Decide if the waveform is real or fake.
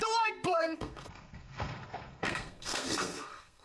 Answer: fake